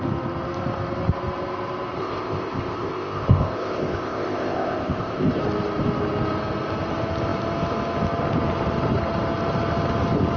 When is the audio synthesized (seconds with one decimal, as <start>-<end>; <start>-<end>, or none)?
2.0-5.4